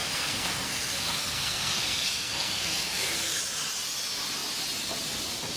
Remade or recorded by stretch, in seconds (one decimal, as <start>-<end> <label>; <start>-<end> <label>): 0.0-3.4 remade; 3.4-5.6 recorded